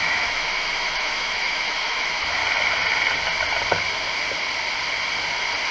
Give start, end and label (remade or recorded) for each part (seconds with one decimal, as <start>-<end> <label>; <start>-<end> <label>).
0.0-2.4 remade; 2.4-5.7 recorded